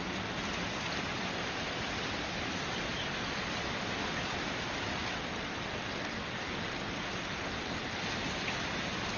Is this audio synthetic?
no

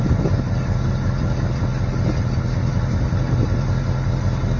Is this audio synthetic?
no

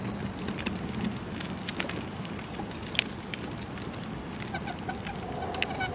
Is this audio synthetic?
no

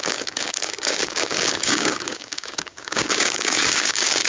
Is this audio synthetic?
yes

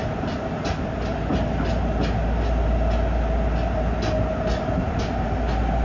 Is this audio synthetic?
no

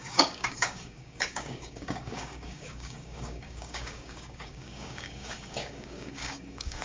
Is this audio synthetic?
yes